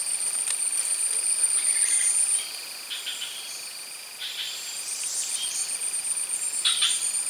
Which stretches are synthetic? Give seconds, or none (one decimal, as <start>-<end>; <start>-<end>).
0.0-7.3